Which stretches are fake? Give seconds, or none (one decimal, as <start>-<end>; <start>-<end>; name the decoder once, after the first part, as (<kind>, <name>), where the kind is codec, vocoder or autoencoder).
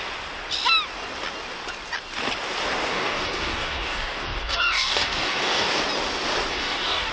2.9-5.7 (codec, DAC); 6.5-7.1